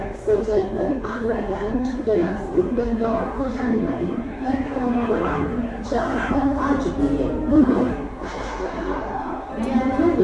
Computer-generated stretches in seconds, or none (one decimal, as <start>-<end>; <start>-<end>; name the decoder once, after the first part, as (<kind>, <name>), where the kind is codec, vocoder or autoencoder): 0.0-6.6 (codec, SNAC); 7.5-9.5